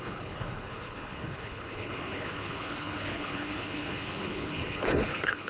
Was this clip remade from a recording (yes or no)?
yes